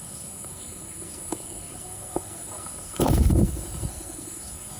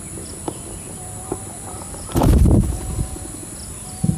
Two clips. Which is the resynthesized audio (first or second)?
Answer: first